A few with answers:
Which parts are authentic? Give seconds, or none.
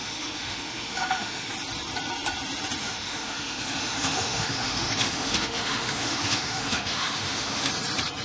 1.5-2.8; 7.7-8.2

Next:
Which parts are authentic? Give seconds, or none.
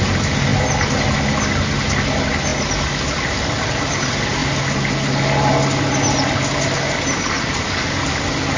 0.0-2.5; 3.7-4.4; 4.9-8.6